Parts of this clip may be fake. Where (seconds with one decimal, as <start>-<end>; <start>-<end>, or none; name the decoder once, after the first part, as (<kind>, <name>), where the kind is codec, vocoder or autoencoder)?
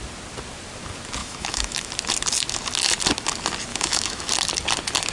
1.2-1.9 (autoencoder, DAC-VAE); 3.7-4.3